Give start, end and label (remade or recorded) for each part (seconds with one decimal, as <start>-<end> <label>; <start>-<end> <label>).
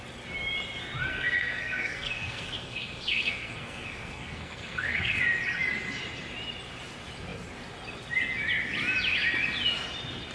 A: 0.0-1.1 recorded; 1.1-5.2 remade; 5.2-10.3 recorded